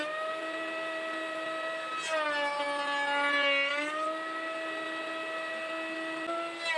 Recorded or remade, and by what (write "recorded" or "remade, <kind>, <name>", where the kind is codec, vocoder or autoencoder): recorded